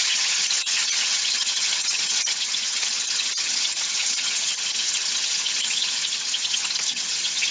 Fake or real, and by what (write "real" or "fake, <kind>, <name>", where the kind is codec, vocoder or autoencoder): fake, vocoder, HiFi-GAN